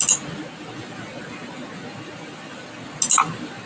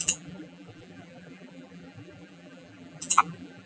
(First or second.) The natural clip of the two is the first